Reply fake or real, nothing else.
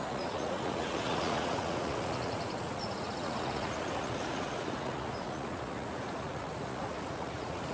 fake